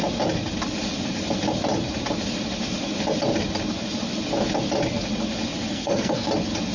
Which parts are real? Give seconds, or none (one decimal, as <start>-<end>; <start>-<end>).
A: 0.0-5.7; 6.3-6.7